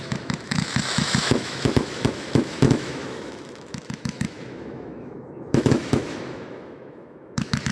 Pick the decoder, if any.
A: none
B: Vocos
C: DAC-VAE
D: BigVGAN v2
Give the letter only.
C